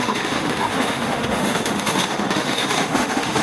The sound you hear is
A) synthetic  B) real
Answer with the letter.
A